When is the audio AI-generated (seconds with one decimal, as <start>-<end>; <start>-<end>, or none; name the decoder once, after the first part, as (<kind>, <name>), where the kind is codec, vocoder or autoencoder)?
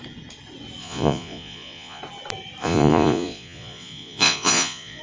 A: 0.8-2.0 (vocoder, Vocos); 2.6-5.0